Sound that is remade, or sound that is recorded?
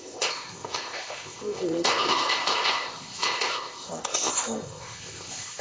remade